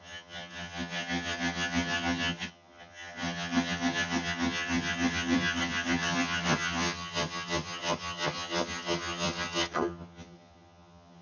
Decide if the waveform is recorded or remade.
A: remade